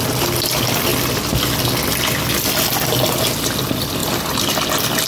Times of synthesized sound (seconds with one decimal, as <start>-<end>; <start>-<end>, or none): none